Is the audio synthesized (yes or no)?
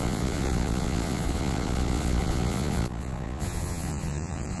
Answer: yes